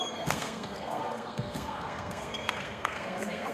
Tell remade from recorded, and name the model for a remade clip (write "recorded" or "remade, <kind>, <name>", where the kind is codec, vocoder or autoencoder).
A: remade, codec, SNAC